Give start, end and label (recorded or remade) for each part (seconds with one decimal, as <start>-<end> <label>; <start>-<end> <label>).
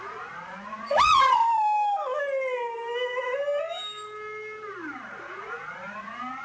0.0-1.4 remade; 1.4-5.2 recorded; 5.2-6.4 remade